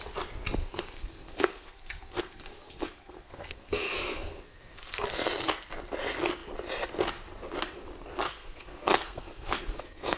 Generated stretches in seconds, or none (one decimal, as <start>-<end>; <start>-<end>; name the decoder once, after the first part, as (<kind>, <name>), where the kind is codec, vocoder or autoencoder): 0.6-5.0 (codec, SNAC); 8.3-10.2